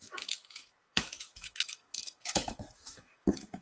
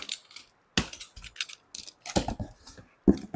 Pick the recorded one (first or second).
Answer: second